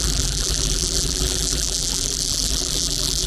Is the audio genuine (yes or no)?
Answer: no